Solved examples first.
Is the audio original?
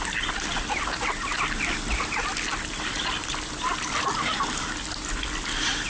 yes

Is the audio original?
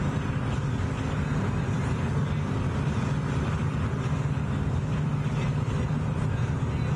yes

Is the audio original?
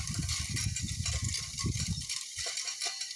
no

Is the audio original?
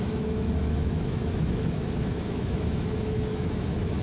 no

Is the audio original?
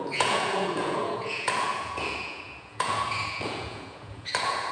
no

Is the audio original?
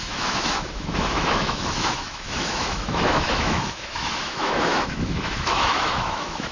no